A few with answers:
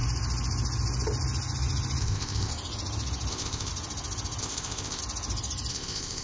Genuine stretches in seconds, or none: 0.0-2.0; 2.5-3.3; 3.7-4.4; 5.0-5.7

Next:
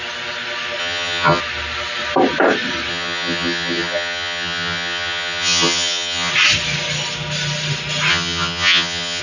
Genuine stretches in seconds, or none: 0.0-0.8; 1.4-2.9; 6.3-8.1

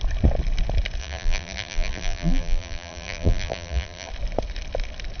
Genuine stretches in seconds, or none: 0.0-1.0; 4.1-5.2